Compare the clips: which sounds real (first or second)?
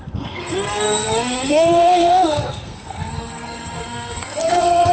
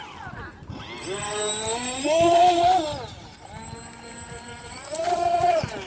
second